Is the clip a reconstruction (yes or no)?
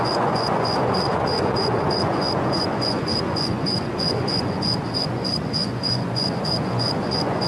yes